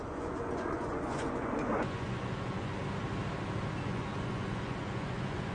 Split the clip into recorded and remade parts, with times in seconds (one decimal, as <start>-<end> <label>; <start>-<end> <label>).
0.0-2.8 remade; 2.8-3.8 recorded; 3.8-5.5 remade